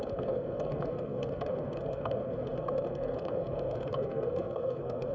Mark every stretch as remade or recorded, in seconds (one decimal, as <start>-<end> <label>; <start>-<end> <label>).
0.0-5.1 remade